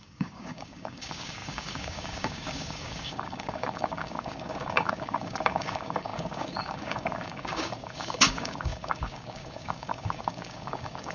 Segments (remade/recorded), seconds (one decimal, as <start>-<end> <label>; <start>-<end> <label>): 0.0-11.1 remade